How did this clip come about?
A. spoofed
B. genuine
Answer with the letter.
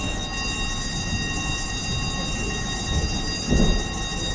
B